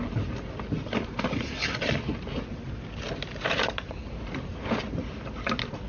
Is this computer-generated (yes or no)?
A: no